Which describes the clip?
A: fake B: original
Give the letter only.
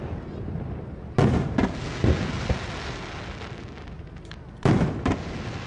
B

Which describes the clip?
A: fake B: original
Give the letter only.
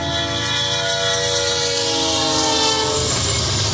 B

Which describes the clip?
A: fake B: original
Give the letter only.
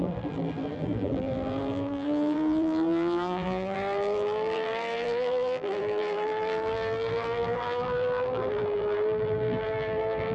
A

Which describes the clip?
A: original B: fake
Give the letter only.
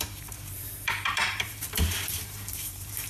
B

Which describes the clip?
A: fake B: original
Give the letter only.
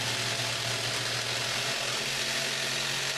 B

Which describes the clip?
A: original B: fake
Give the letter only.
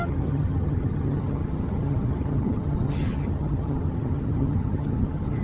B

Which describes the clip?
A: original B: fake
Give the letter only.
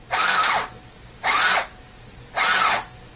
A